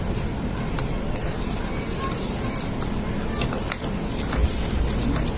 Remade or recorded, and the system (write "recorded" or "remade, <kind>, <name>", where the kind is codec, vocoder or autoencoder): recorded